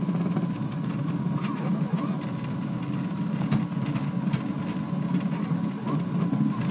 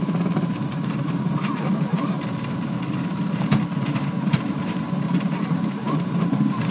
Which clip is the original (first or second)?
first